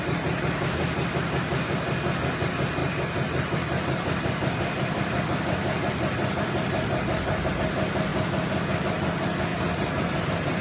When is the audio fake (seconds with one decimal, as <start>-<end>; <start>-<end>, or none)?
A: 2.8-7.5; 9.5-10.2